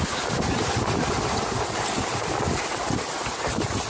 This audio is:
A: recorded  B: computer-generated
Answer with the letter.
A